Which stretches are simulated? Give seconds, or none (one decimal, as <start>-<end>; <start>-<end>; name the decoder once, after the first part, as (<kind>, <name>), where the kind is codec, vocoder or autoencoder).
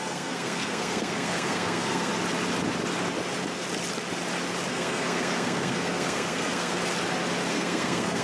0.0-2.1 (codec, SNAC); 4.7-6.8; 7.5-8.2